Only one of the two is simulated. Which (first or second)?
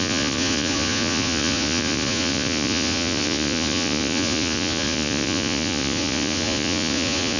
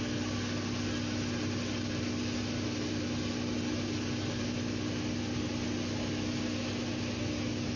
first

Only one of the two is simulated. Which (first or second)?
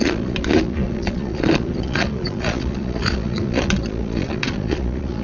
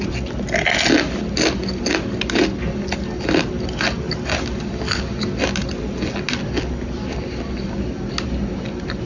first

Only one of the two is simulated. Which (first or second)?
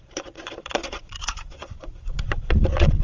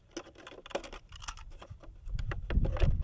first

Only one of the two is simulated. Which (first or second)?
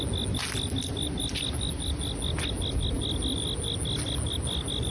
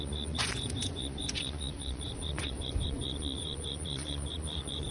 second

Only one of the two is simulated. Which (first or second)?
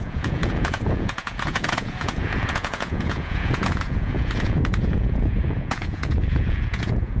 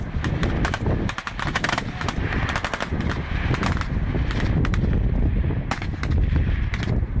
first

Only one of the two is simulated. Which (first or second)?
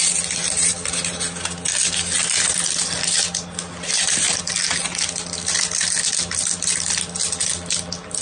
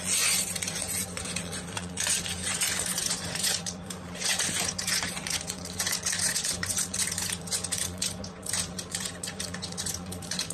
second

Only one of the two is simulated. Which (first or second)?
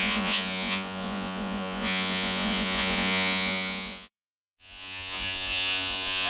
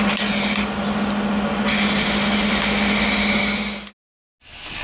first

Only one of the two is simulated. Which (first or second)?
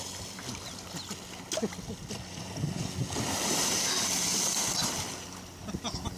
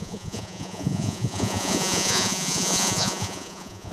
second